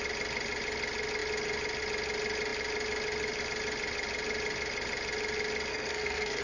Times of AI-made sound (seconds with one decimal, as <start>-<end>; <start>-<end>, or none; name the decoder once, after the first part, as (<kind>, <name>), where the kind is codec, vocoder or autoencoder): 5.7-6.4 (codec, SNAC)